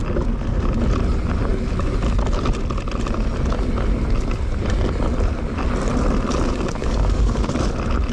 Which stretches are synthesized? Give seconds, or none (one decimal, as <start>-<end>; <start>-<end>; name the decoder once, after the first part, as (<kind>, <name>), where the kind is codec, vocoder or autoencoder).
6.8-7.5 (codec, DAC)

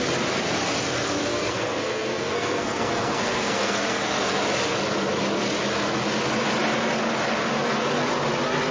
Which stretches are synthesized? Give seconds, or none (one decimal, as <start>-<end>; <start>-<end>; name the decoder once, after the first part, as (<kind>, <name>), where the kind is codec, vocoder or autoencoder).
1.3-4.4 (codec, SNAC)

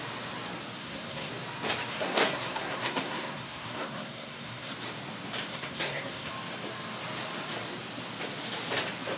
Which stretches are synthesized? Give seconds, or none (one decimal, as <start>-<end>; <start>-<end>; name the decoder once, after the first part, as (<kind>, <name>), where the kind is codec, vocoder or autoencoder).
0.8-1.3 (codec, SNAC); 1.9-4.7; 5.5-6.3

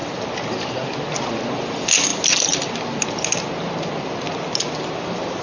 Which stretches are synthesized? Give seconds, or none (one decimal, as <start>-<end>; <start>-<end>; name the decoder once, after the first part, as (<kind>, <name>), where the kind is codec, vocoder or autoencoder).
none

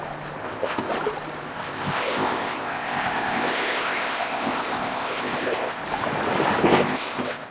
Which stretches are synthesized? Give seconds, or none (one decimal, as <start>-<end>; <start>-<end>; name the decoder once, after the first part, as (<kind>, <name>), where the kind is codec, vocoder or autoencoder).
0.4-0.9 (codec, ZipCodec); 1.5-5.8; 6.6-7.5

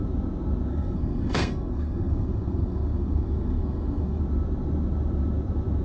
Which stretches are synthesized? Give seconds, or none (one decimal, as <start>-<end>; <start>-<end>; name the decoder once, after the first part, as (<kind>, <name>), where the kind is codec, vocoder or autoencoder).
0.7-4.2 (codec, SNAC)